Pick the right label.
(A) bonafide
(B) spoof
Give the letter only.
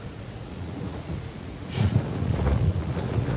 B